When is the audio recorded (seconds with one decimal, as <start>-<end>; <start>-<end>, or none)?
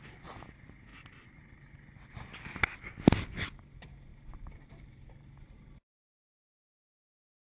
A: 0.0-7.5